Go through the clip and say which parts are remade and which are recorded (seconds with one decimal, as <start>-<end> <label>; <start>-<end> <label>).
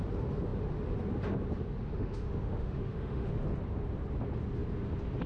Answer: 0.0-1.8 recorded; 1.8-3.3 remade; 3.3-5.3 recorded